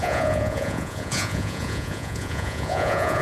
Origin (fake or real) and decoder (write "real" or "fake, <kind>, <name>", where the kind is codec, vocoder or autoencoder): fake, vocoder, Vocos